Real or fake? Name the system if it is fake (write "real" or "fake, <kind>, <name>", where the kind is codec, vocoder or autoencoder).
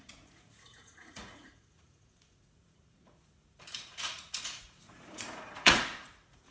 fake, vocoder, Vocos